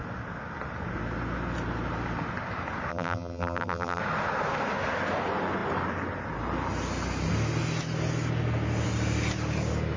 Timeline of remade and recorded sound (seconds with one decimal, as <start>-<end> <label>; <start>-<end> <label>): 0.0-2.9 recorded; 2.9-4.0 remade; 4.0-10.0 recorded